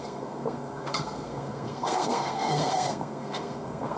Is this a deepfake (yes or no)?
yes